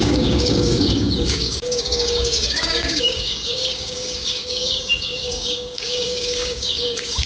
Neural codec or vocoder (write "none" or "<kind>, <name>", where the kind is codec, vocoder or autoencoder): codec, DAC